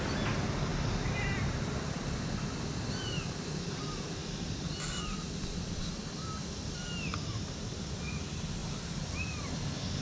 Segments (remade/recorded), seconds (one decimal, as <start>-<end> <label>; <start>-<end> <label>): 0.0-7.1 recorded; 7.1-7.8 remade; 7.8-10.0 recorded